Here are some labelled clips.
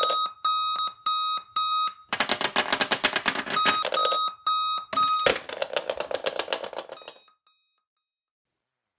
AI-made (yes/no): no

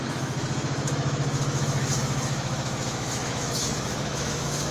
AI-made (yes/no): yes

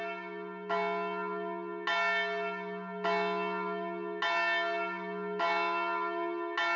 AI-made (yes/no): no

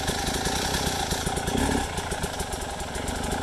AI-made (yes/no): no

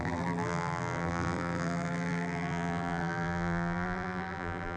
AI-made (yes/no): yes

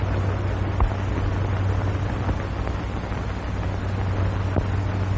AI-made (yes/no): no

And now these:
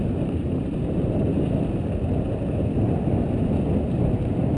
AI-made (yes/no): no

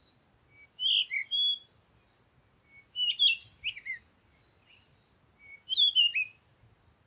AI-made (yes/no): no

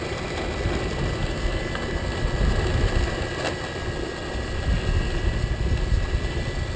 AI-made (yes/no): no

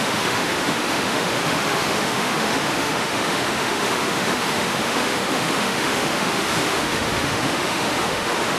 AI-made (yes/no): yes